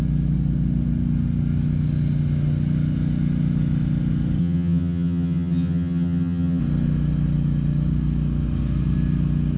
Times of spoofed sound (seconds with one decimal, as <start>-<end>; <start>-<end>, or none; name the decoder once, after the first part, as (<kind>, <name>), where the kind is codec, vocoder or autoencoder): 4.4-6.6 (vocoder, HiFi-GAN)